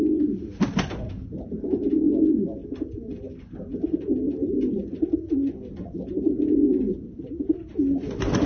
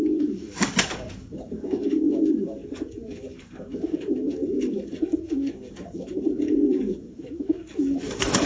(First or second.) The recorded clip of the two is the first